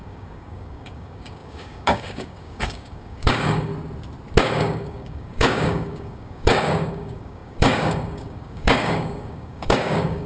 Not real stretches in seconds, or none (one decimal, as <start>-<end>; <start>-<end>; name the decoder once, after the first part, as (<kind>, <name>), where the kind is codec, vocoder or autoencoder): 0.0-3.7 (codec, DAC); 4.4-10.3